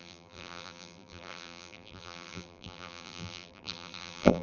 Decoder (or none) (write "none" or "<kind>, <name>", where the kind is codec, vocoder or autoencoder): vocoder, BigVGAN v2